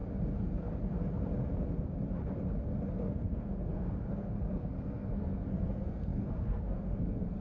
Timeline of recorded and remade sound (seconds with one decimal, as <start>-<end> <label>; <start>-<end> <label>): 0.0-2.9 recorded; 2.9-7.4 remade